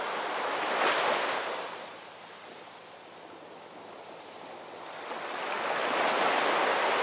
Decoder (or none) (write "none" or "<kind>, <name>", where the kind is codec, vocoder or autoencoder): none